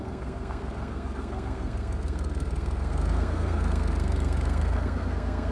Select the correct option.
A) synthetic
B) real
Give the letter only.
A